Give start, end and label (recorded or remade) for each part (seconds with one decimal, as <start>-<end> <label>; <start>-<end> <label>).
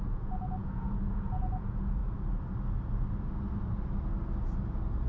0.0-2.0 remade; 2.0-5.1 recorded